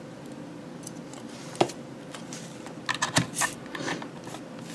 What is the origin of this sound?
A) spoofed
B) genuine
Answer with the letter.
B